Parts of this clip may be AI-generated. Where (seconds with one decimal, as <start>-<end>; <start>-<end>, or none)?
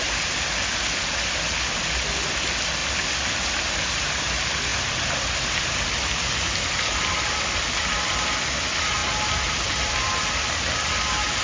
none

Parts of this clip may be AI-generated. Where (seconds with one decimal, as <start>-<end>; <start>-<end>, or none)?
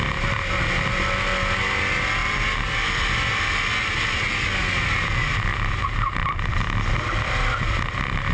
none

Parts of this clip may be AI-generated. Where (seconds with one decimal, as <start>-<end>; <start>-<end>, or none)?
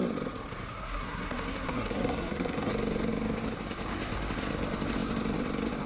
0.7-2.7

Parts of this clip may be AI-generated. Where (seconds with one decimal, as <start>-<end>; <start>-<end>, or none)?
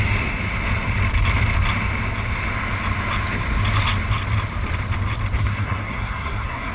5.4-6.7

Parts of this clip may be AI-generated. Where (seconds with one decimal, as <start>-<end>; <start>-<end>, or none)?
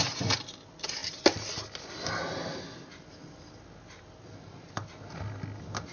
none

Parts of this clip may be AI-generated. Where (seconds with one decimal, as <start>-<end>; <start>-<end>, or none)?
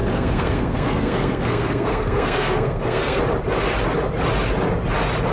0.0-3.2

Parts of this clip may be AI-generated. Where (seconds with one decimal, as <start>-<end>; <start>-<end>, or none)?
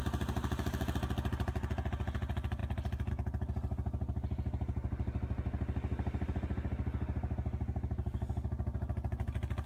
none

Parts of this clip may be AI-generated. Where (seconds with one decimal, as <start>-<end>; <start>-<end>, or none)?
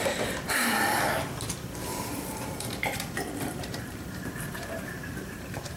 1.9-5.8